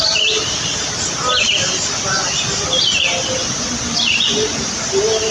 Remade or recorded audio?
recorded